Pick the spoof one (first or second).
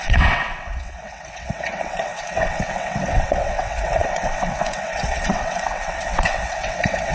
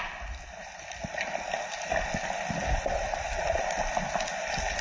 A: first